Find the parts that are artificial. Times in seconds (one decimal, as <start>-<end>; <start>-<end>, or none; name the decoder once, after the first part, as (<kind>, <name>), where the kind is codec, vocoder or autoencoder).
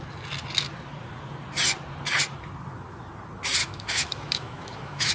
3.6-5.1 (autoencoder, DAC-VAE)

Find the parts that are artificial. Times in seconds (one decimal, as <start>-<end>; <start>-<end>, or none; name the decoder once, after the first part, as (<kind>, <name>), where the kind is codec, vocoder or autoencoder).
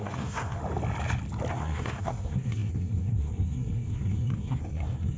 0.0-0.6 (codec, SNAC); 1.5-5.2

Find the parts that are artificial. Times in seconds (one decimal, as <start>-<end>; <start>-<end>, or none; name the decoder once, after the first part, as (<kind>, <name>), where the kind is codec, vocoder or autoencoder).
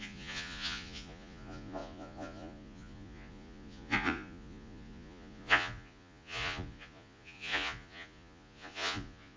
0.0-9.4 (vocoder, Vocos)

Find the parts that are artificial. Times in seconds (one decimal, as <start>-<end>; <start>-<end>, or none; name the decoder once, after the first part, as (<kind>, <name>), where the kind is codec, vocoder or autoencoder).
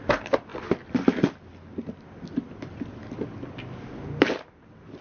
none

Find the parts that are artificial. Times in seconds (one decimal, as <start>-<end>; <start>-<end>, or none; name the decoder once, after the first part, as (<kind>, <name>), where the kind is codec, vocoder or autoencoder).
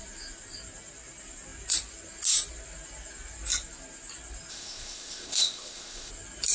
4.5-6.1 (codec, ZipCodec)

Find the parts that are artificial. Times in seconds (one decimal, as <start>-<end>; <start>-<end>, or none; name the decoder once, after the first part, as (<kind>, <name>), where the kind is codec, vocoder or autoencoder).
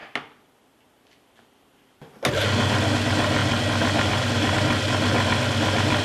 none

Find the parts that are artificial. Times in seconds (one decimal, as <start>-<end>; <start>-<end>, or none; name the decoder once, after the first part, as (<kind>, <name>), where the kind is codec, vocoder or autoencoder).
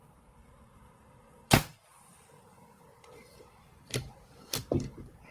0.0-5.3 (vocoder, BigVGAN v2)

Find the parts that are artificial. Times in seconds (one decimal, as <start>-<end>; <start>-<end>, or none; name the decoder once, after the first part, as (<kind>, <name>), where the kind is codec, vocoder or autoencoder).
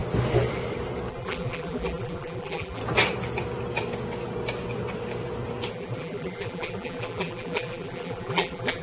1.1-2.8 (vocoder, BigVGAN v2); 5.7-8.8